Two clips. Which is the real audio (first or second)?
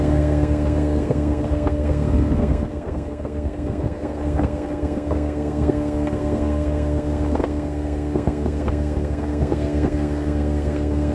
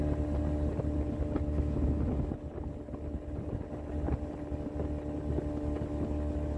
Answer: second